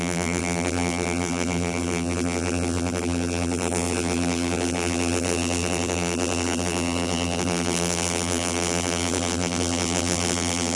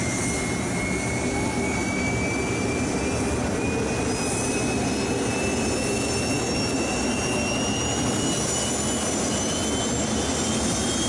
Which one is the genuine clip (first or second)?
second